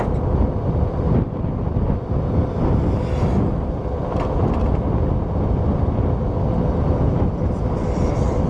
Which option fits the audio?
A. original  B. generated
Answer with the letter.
A